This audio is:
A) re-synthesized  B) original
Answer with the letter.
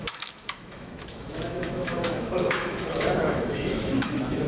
A